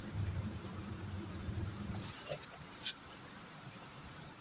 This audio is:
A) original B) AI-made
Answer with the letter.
B